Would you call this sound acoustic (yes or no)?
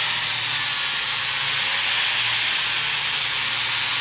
yes